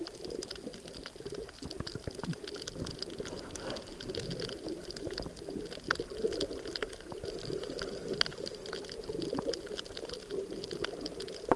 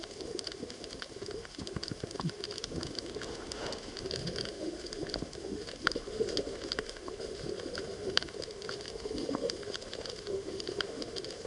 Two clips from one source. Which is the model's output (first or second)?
second